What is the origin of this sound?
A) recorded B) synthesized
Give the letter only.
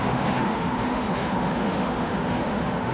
B